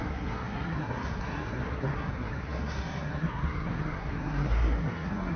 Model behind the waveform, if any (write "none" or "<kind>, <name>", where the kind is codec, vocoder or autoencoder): codec, SNAC